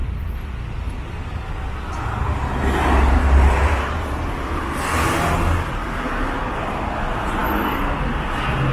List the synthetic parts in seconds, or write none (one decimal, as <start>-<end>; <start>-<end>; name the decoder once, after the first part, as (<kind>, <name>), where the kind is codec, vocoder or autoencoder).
none